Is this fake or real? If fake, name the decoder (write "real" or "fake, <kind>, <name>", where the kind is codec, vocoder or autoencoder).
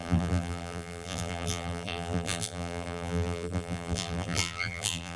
fake, vocoder, BigVGAN v2